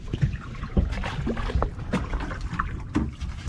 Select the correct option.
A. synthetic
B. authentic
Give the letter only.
B